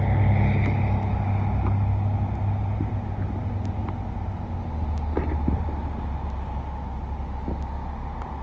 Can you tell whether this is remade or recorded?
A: recorded